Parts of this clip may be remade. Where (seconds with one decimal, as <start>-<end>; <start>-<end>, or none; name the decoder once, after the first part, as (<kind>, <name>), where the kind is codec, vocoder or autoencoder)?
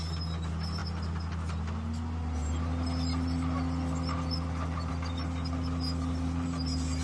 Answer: none